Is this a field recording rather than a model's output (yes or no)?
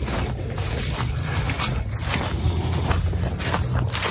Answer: yes